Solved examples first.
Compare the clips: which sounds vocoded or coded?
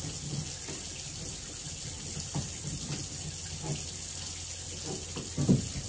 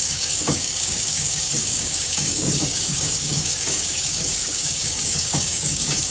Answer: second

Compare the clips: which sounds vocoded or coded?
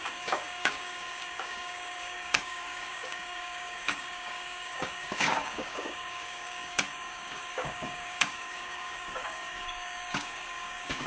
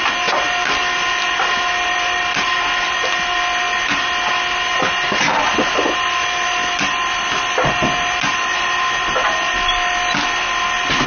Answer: first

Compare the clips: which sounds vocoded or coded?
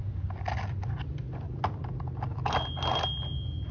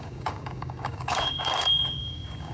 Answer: second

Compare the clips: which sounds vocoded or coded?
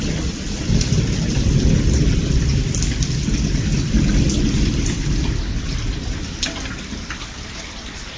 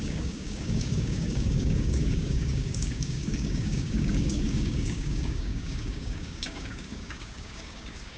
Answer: second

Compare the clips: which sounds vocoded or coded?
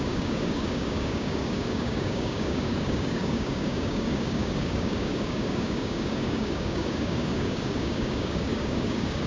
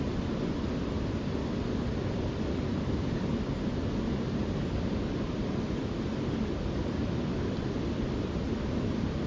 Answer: first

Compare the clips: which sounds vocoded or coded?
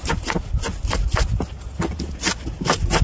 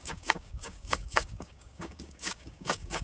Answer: second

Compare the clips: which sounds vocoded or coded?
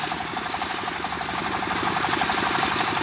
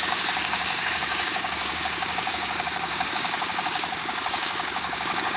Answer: second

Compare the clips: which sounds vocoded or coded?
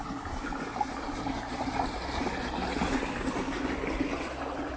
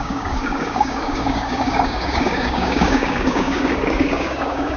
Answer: second